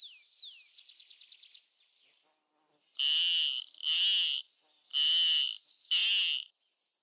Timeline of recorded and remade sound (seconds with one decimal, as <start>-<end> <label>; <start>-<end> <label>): 0.0-7.0 recorded